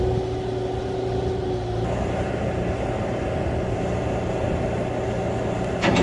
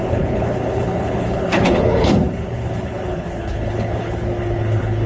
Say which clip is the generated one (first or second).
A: second